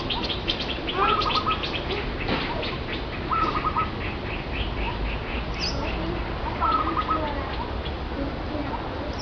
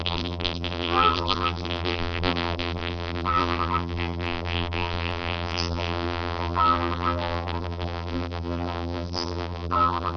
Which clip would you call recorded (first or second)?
first